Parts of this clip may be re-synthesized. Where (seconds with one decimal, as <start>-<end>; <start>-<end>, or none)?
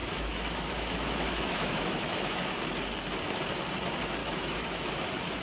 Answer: 0.0-2.4; 4.2-4.9